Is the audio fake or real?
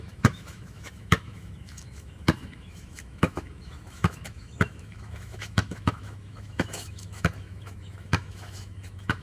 fake